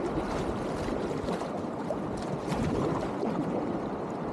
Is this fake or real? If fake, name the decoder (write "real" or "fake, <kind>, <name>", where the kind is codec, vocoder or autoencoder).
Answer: real